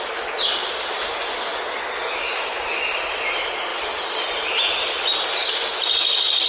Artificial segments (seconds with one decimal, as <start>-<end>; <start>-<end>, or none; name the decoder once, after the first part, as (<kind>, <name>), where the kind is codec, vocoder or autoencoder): 3.7-4.3 (vocoder, BigVGAN v2); 5.4-6.5